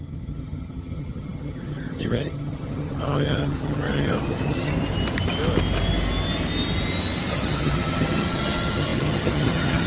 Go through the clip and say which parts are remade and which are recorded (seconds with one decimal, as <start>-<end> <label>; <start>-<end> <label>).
0.0-4.7 remade; 4.7-7.3 recorded; 7.3-9.9 remade